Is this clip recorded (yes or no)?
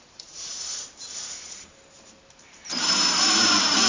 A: no